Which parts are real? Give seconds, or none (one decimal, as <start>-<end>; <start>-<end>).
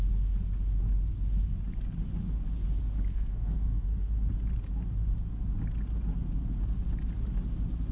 0.0-3.1; 4.1-7.9